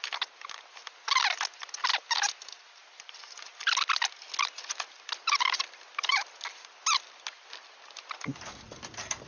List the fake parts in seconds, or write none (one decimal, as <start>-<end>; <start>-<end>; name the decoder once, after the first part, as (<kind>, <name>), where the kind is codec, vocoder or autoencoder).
none